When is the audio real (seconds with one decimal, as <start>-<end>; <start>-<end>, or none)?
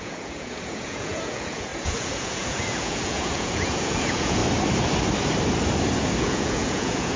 4.4-6.2